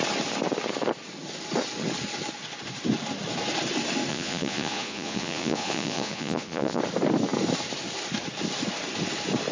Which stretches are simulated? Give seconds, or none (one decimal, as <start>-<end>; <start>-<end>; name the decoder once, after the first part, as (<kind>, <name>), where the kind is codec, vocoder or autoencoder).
4.1-6.8 (vocoder, Vocos)